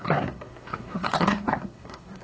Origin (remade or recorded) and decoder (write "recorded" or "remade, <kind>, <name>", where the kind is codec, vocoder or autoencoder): remade, codec, SNAC